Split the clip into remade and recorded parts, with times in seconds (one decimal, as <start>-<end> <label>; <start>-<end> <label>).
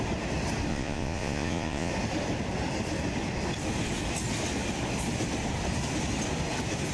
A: 0.0-0.7 recorded; 0.7-1.9 remade; 1.9-6.9 recorded